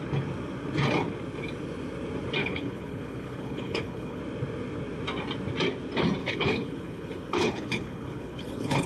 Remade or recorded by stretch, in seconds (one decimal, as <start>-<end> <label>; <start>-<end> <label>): 0.0-2.4 recorded; 2.4-4.2 remade; 4.2-6.2 recorded; 6.2-8.9 remade